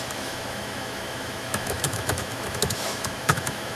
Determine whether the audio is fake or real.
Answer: fake